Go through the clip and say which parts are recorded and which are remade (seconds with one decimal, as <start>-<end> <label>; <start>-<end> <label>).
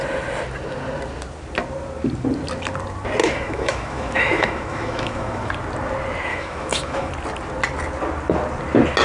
0.0-3.2 recorded; 3.2-5.5 remade; 5.5-6.3 recorded; 6.3-7.1 remade; 7.1-9.0 recorded